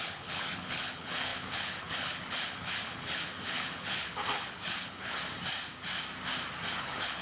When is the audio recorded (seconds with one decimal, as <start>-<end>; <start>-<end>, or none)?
5.2-6.8

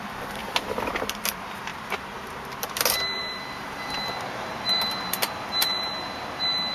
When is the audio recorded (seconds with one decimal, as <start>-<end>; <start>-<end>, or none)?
0.4-1.0; 1.7-2.6